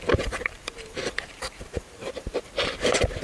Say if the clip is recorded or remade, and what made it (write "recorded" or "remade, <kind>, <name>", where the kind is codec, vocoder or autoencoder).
remade, vocoder, BigVGAN v2